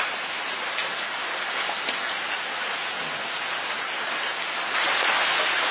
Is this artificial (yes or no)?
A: no